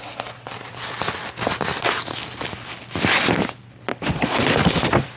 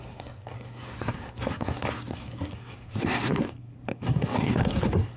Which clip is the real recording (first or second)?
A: first